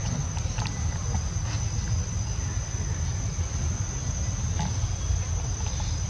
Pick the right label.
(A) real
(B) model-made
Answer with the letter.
A